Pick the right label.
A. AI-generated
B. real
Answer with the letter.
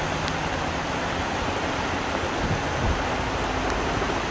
B